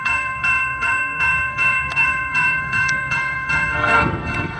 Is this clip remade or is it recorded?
remade